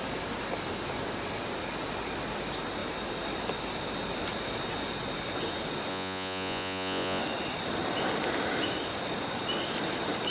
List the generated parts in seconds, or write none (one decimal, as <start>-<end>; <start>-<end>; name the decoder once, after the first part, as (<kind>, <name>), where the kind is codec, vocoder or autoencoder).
5.9-7.2 (vocoder, Vocos)